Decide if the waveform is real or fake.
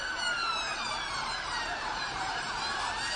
fake